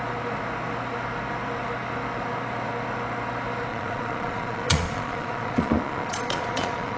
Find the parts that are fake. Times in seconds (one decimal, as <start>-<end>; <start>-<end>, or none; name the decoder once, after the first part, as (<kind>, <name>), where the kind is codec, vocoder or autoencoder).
3.7-7.0 (vocoder, Vocos)